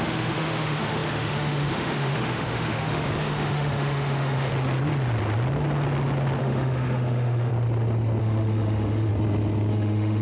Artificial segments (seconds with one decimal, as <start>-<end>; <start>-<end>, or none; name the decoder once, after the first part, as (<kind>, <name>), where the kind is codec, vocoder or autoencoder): 0.0-4.5 (autoencoder, DAC-VAE); 6.4-7.5; 8.2-9.1; 9.7-10.2